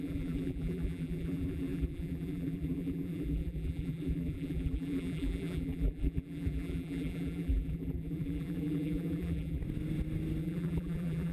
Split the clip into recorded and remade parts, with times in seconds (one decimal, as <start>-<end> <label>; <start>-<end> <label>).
0.0-9.6 remade; 9.6-10.4 recorded; 10.4-11.3 remade